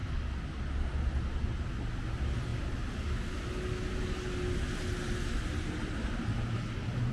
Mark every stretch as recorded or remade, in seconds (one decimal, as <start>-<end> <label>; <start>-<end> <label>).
0.0-7.1 recorded